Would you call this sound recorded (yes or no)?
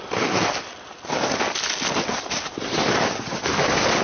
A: yes